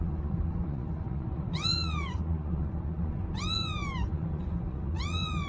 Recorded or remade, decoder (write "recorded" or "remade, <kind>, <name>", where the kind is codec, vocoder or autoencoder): remade, vocoder, Vocos